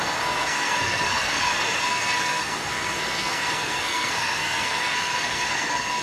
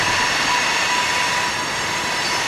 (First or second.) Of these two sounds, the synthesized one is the first